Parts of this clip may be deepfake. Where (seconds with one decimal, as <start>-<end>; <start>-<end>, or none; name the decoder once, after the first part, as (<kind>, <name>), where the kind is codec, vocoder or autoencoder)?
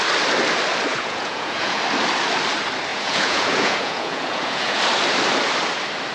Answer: 0.9-1.8 (vocoder, Vocos); 2.9-4.8